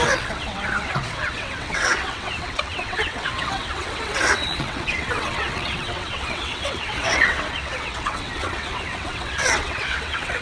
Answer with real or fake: fake